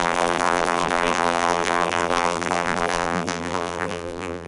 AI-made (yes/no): yes